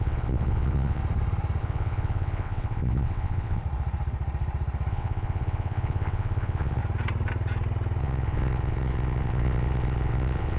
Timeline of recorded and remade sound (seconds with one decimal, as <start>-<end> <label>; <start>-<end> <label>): 0.0-1.0 remade; 1.0-1.6 recorded; 1.6-3.6 remade; 3.6-4.9 recorded; 4.9-6.8 remade; 6.8-8.0 recorded; 8.0-10.6 remade